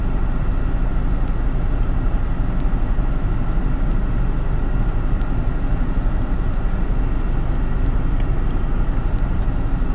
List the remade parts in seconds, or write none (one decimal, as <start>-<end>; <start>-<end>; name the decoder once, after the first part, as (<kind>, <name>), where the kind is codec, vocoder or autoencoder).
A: none

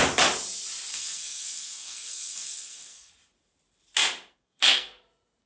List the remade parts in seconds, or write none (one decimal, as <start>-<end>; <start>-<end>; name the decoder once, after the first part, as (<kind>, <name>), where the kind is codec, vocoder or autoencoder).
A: 0.9-3.1 (codec, SNAC); 4.3-5.0

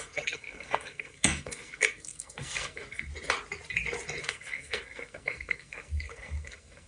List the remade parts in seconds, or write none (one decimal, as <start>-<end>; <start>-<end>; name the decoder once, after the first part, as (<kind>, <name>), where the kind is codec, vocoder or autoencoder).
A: 0.0-3.1 (codec, SNAC); 4.2-6.9

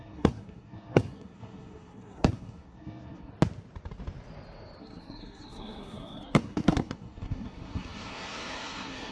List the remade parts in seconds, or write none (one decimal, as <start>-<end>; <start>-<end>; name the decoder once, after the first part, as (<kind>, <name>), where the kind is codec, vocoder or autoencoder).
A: 0.0-3.3 (codec, SNAC); 4.8-9.1

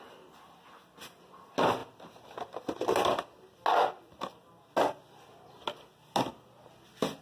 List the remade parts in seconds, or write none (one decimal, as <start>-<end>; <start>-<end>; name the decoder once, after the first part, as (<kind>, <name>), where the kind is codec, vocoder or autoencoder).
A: none

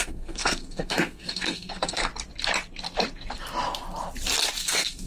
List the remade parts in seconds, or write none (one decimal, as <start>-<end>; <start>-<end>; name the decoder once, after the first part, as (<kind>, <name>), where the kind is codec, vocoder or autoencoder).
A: 0.0-2.1 (codec, SNAC); 4.6-5.1